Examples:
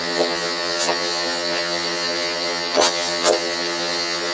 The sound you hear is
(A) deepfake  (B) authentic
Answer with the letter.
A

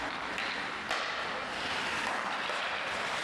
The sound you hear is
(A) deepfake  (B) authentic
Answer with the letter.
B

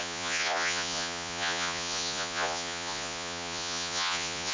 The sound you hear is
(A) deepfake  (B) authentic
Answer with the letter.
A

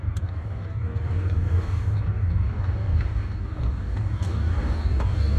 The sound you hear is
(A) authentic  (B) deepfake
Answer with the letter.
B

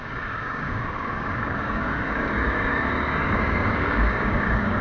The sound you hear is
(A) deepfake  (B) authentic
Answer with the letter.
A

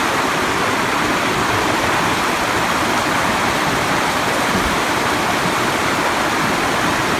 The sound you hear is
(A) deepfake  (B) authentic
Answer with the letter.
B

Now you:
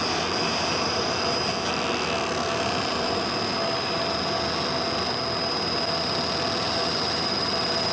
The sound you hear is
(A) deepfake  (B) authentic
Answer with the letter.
B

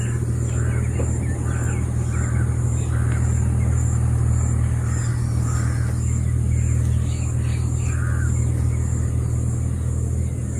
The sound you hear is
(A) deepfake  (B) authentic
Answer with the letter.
B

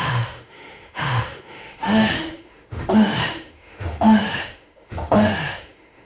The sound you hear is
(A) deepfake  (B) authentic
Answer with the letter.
A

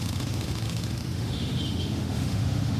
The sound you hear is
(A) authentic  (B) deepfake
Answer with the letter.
B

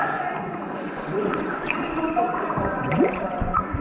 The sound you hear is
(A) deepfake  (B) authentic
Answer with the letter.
A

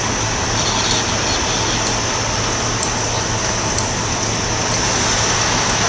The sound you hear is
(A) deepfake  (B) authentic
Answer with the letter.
B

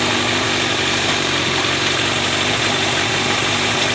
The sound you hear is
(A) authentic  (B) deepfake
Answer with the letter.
B